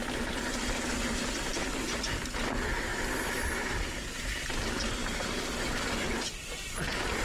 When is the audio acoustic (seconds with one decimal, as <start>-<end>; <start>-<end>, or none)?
0.6-1.5; 2.0-2.9; 4.1-5.0; 5.6-7.2